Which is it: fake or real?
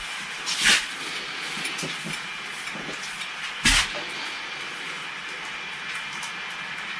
real